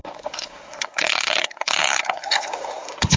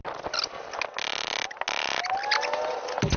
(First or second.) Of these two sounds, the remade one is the first